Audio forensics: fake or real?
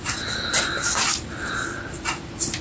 real